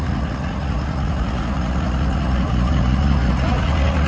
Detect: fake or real fake